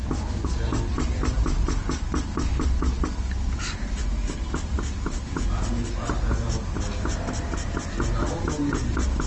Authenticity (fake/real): real